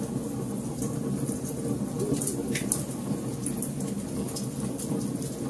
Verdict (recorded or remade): recorded